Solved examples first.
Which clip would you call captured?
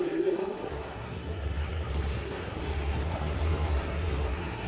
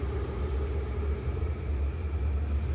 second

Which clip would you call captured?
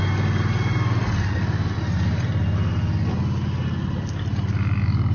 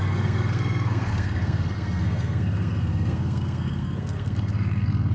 first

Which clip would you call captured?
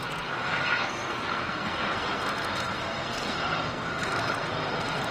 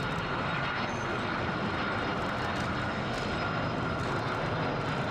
second